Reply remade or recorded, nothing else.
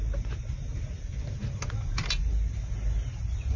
recorded